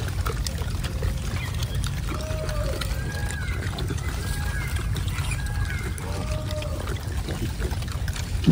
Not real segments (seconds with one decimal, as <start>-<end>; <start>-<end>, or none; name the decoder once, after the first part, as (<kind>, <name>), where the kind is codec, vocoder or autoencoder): 3.2-4.5 (vocoder, BigVGAN v2)